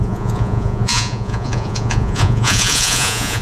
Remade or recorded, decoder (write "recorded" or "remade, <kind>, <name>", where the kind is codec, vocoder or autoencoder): remade, vocoder, Vocos